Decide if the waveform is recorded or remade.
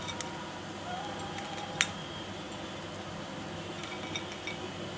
recorded